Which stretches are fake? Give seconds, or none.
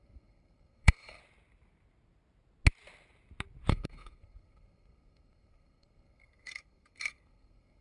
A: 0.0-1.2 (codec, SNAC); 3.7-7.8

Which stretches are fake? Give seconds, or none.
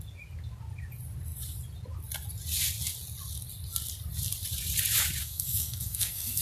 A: 5.2-6.4 (codec, SNAC)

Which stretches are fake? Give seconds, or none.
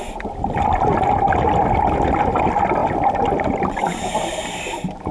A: none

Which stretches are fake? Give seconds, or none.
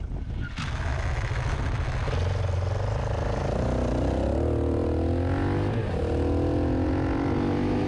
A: none